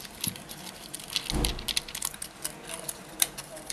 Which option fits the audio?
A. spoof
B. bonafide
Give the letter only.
B